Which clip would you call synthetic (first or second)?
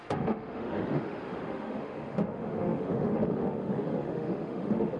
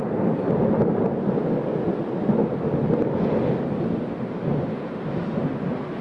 first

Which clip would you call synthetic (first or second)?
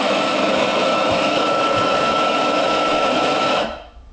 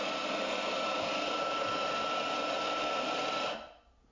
first